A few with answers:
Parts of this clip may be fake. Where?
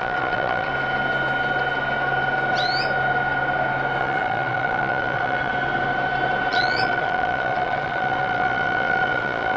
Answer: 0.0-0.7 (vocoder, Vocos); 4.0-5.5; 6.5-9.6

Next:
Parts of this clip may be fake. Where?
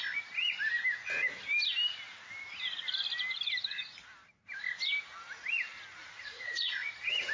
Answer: 6.0-7.3 (vocoder, Vocos)